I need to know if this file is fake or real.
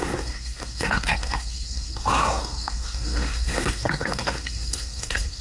fake